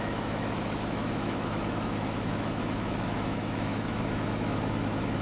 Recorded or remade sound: remade